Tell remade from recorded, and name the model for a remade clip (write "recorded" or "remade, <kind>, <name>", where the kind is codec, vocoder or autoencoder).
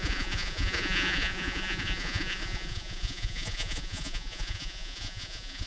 remade, vocoder, Vocos